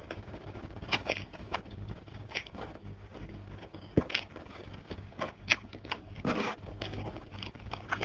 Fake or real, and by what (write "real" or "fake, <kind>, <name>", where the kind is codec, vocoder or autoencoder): fake, codec, DAC